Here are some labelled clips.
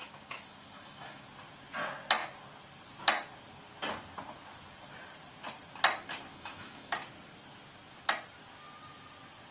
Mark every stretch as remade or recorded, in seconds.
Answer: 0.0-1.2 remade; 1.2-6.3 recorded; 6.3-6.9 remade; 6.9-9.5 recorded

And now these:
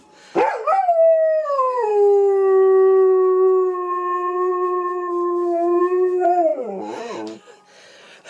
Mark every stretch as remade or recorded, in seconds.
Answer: 0.0-6.5 recorded; 6.5-7.4 remade; 7.4-8.3 recorded